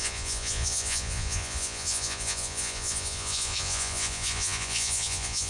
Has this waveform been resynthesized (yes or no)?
yes